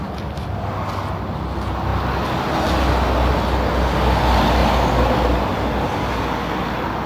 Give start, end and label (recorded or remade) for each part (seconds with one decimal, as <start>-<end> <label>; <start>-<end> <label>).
0.0-7.1 recorded